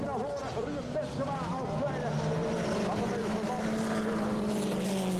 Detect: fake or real real